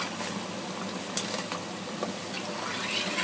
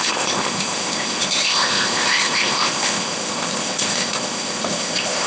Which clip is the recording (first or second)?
first